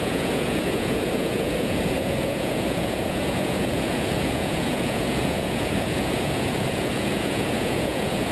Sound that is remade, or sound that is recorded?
remade